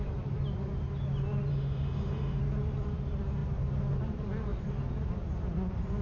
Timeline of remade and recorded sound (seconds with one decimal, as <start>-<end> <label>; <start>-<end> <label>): 0.0-1.5 recorded; 1.5-2.4 remade; 2.4-6.0 recorded